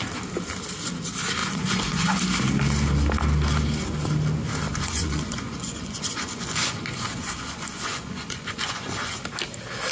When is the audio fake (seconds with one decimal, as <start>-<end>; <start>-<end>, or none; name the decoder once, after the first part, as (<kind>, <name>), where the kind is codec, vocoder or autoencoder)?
1.4-2.2 (vocoder, Vocos); 4.7-9.1